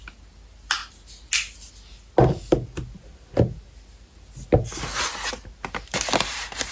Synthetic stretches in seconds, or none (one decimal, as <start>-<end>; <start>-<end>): none